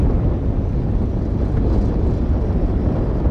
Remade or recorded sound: recorded